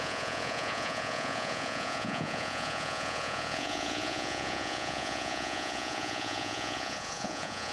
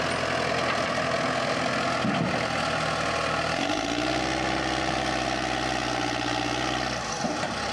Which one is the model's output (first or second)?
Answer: first